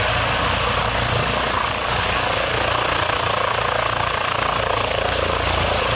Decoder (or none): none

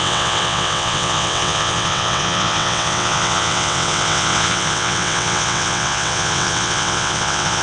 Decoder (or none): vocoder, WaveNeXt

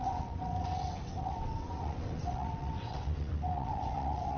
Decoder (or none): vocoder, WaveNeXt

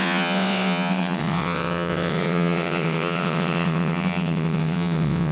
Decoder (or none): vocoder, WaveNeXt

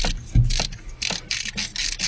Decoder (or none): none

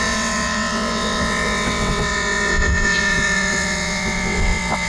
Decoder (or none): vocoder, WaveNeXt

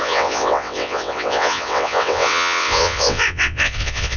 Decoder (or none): vocoder, WaveNeXt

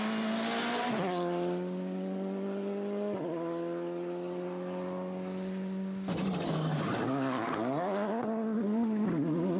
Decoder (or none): none